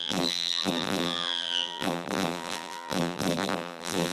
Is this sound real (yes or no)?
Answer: no